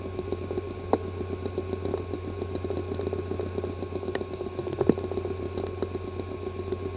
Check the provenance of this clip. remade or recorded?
recorded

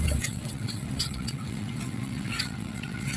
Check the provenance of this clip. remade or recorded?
remade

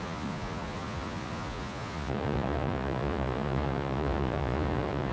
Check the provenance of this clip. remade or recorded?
remade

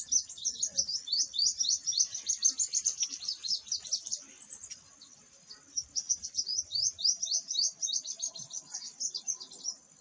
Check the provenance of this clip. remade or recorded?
recorded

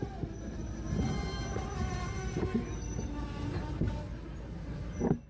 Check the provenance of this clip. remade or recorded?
recorded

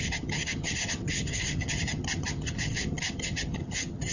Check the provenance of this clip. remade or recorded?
remade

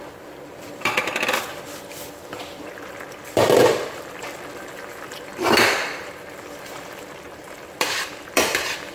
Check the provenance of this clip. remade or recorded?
remade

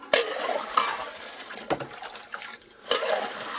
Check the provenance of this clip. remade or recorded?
recorded